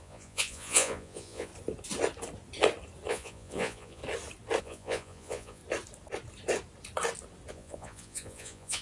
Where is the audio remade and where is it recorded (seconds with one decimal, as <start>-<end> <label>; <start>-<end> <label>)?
0.0-1.5 remade; 1.5-3.1 recorded; 3.1-4.0 remade; 4.0-4.6 recorded; 4.6-5.6 remade; 5.6-7.5 recorded; 7.5-8.8 remade